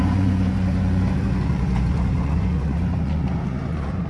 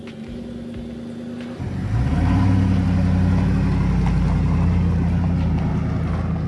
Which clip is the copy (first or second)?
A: first